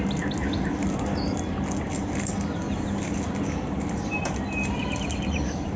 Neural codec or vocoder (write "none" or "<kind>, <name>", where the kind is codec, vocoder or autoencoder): none